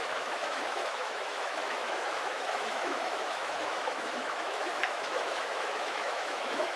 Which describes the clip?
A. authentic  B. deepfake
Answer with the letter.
B